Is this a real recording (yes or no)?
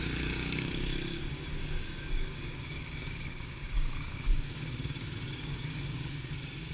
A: no